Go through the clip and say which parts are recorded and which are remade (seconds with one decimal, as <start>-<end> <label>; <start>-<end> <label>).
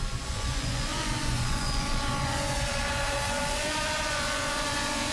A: 0.0-5.1 remade